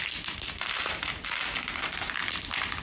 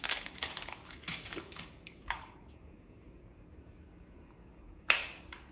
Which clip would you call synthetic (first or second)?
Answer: second